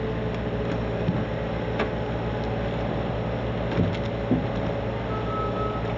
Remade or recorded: recorded